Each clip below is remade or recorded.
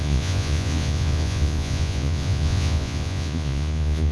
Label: remade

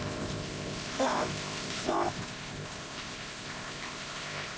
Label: remade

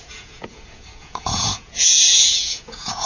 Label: remade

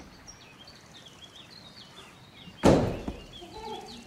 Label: recorded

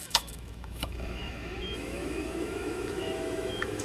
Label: remade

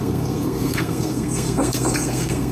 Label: remade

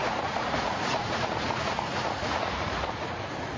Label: remade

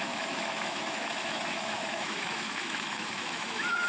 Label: remade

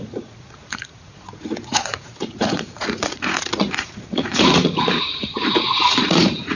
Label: remade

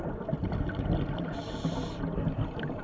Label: recorded